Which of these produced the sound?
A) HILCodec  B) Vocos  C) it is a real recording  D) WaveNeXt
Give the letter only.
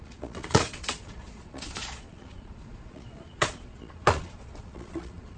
B